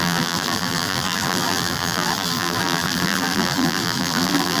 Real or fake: fake